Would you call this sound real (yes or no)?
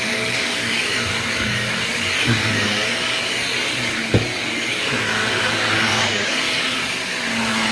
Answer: no